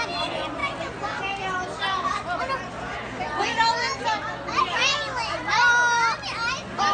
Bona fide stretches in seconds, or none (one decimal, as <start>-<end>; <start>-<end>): 0.0-6.9